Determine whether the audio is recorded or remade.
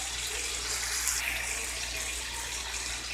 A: recorded